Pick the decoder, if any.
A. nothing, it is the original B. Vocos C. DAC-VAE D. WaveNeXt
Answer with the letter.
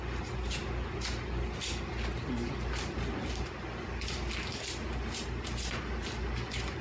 A